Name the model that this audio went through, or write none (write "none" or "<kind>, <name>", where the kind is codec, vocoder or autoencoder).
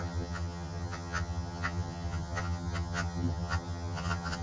vocoder, HiFi-GAN